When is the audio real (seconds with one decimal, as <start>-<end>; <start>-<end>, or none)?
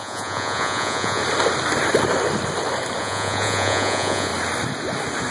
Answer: 1.2-3.0; 4.3-5.3